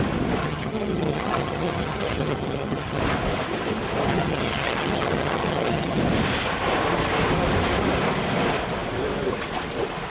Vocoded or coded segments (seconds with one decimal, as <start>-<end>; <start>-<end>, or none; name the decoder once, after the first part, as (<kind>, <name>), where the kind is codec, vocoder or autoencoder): 0.4-3.0 (vocoder, HiFi-GAN); 4.1-6.0